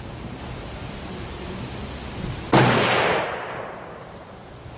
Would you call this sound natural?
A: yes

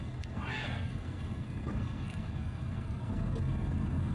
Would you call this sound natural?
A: no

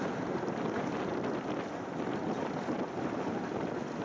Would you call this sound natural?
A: yes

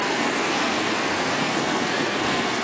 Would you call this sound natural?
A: no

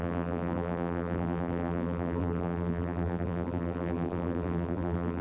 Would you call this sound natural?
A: no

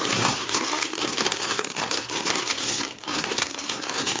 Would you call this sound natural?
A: no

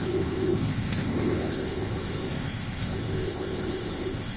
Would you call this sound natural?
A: no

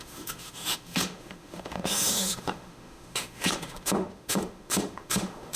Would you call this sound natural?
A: no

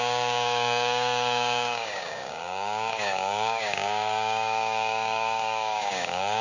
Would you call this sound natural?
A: no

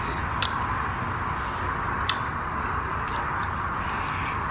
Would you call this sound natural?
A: yes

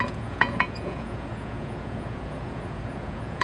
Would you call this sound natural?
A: no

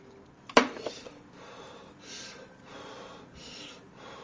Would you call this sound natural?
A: yes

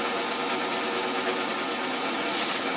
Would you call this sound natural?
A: yes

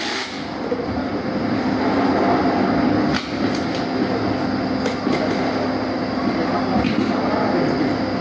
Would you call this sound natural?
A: yes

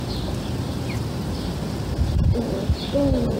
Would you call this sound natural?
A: yes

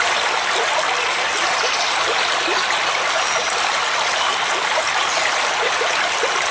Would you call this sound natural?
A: yes